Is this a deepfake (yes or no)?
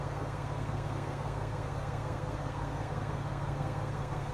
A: yes